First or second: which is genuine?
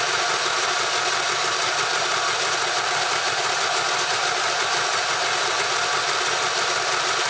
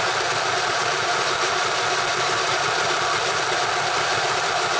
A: first